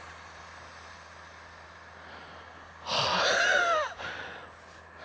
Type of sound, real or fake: real